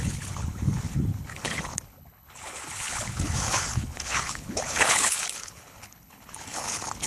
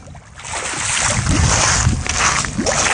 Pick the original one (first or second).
second